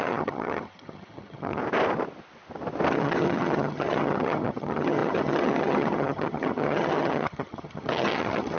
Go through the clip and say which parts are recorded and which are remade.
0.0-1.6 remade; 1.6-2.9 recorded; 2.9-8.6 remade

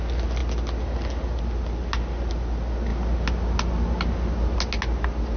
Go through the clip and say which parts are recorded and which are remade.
0.0-5.4 recorded

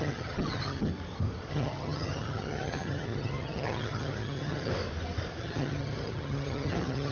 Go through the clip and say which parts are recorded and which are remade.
0.0-0.9 remade; 0.9-1.5 recorded; 1.5-4.7 remade; 4.7-5.4 recorded; 5.4-7.1 remade

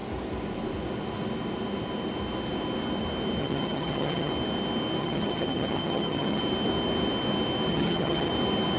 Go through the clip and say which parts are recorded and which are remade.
0.0-3.4 recorded; 3.4-4.3 remade; 4.3-5.0 recorded; 5.0-6.4 remade; 6.4-7.7 recorded; 7.7-8.3 remade; 8.3-8.8 recorded

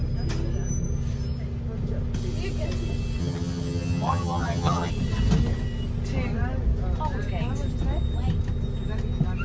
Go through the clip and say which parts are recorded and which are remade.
0.0-3.2 recorded; 3.2-4.9 remade; 4.9-9.4 recorded

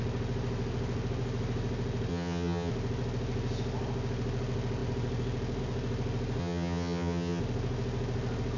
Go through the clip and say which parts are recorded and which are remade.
0.0-2.1 recorded; 2.1-2.7 remade; 2.7-6.4 recorded; 6.4-7.4 remade; 7.4-8.6 recorded

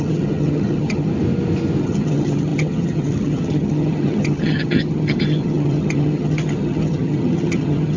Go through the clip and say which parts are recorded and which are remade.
0.0-1.1 remade; 1.1-1.8 recorded; 1.8-8.0 remade